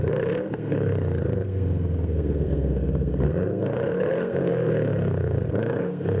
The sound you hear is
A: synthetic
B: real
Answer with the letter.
A